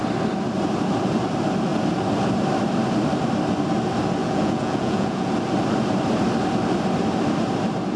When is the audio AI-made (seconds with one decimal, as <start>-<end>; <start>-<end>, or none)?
4.2-5.3